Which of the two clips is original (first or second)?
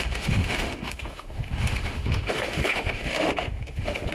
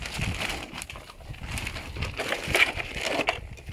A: second